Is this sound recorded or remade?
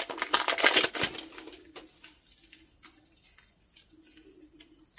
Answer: recorded